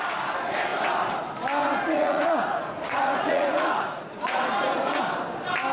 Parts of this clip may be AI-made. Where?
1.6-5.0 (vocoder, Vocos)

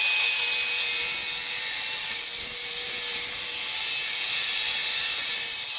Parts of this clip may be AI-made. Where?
1.4-2.2 (vocoder, BigVGAN v2); 3.1-3.8; 4.8-5.3

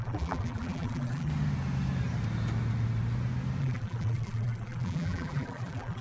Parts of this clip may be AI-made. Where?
0.0-1.3 (vocoder, BigVGAN v2); 3.6-6.0